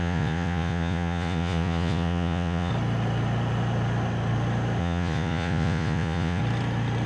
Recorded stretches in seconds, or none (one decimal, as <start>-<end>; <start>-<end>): 2.7-4.8; 6.4-7.1